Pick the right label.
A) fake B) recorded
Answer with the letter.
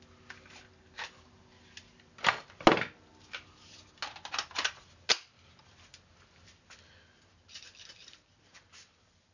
B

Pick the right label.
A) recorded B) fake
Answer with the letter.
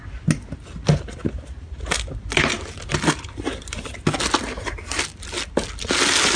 A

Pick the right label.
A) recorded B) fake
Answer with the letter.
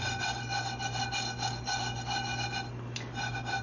A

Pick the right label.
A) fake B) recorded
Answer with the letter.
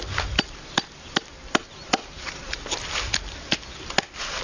B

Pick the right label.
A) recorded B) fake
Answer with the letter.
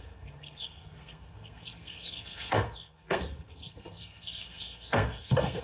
B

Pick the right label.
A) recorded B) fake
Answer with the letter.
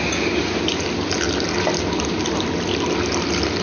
A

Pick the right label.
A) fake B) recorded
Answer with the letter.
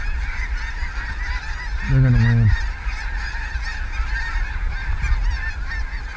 B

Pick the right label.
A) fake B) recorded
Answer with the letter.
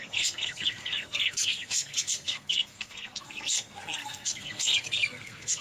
A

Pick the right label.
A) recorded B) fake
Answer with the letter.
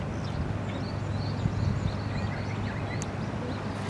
A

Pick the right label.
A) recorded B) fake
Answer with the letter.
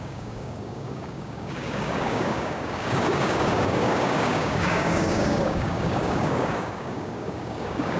B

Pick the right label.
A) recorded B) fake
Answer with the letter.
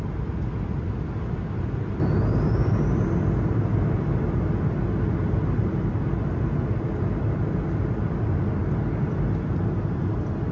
A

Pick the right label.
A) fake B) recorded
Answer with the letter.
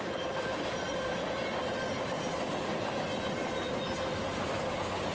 B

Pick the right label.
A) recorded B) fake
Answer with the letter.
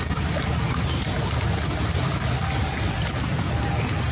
A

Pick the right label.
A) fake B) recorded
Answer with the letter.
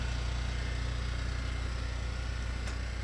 B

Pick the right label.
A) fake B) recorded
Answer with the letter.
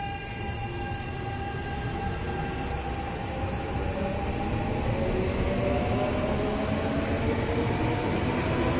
B